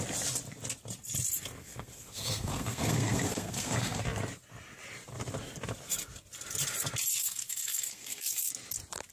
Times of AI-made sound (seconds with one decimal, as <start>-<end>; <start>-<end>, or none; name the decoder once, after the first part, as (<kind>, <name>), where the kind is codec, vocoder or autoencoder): 1.6-4.0 (codec, SNAC); 7.1-8.5